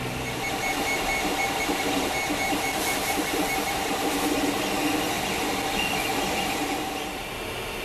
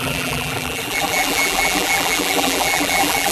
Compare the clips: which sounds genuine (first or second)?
first